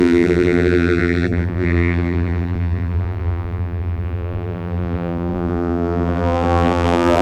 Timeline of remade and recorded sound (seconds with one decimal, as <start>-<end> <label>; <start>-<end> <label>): 0.0-7.2 remade